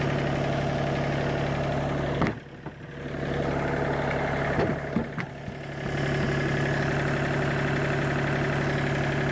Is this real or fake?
real